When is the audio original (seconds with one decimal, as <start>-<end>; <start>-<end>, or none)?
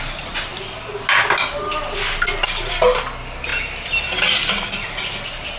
0.0-5.6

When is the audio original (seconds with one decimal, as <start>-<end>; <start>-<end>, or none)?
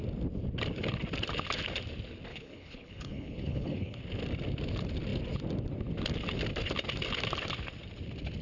0.0-2.3; 4.0-8.4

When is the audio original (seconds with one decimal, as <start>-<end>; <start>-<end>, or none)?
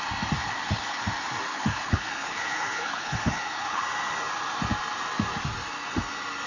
0.0-0.4; 1.0-1.5; 3.8-6.5